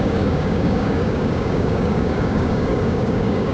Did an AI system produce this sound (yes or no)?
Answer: yes